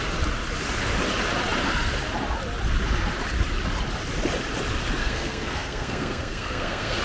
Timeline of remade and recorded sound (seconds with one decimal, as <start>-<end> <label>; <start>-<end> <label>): 0.0-5.0 recorded; 5.0-7.0 remade